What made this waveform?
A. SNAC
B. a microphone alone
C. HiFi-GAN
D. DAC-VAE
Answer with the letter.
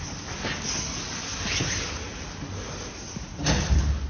B